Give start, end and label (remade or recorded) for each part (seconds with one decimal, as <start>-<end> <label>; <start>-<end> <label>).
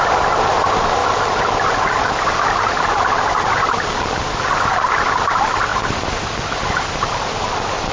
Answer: 0.0-5.7 recorded; 5.7-6.3 remade; 6.3-7.9 recorded